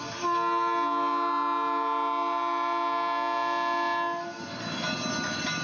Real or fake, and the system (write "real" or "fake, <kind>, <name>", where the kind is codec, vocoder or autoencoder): real